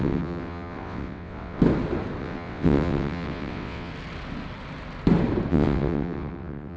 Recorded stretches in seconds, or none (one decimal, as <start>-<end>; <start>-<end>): 1.6-2.2; 3.9-5.5